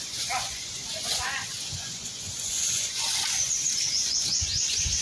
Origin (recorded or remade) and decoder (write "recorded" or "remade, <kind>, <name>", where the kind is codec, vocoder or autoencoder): remade, vocoder, Vocos